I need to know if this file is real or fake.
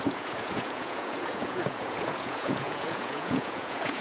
fake